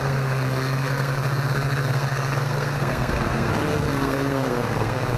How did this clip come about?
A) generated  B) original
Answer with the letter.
A